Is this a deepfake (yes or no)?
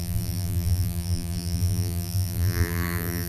yes